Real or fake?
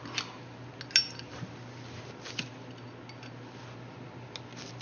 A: real